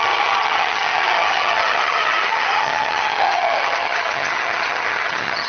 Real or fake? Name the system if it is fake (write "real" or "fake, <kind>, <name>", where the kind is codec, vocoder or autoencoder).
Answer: fake, vocoder, HiFi-GAN